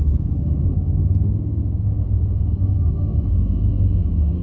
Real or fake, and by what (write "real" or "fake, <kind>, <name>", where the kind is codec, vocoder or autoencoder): fake, autoencoder, DAC-VAE